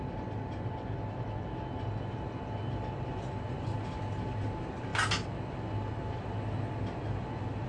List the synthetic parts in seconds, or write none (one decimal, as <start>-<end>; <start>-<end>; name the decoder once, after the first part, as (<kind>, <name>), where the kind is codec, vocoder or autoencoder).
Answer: none